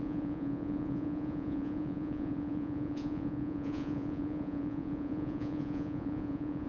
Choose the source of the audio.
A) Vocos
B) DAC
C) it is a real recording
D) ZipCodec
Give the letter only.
A